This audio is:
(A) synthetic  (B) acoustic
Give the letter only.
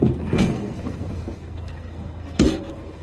A